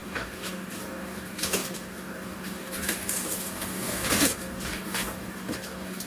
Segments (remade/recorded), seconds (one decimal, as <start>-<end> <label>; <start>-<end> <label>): 0.0-6.1 remade

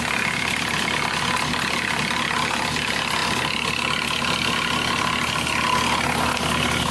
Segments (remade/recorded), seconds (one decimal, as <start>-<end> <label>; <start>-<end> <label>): 0.0-6.9 recorded